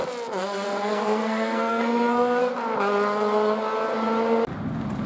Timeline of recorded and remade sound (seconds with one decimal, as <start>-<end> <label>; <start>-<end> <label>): 0.0-0.4 recorded; 0.4-2.4 remade; 2.4-5.1 recorded